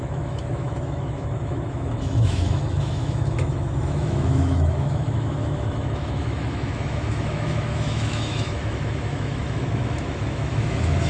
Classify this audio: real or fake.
fake